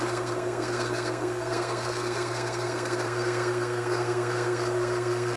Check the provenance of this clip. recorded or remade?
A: remade